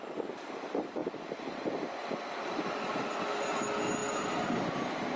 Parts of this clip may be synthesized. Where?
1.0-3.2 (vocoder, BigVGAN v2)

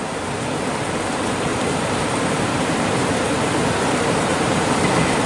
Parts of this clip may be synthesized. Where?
1.5-4.7 (vocoder, BigVGAN v2)

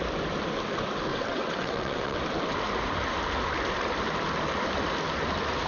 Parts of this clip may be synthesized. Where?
1.1-2.2 (vocoder, WaveNeXt)

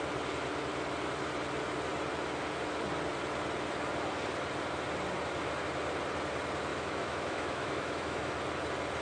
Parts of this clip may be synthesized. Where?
6.7-8.3 (autoencoder, DAC-VAE)

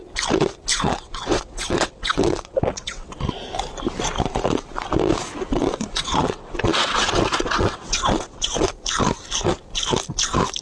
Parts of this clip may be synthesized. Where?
0.7-3.1 (vocoder, WaveNeXt); 5.5-8.7

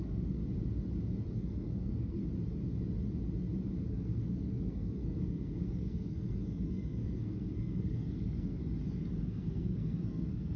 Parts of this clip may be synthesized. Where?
0.0-0.4 (codec, SNAC); 1.3-2.2; 3.9-8.6; 9.2-10.6

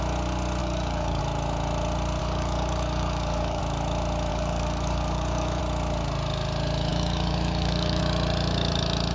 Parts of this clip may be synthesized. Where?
0.6-1.2 (codec, DAC); 2.2-3.6; 4.3-5.6; 6.9-8.0

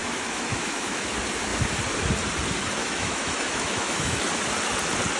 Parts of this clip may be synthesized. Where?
0.0-1.1 (autoencoder, DAC-VAE); 2.8-4.2